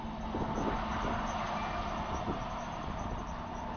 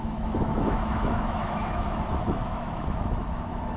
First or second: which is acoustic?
first